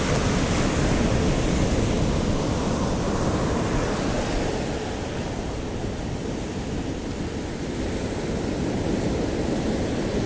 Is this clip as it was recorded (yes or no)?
yes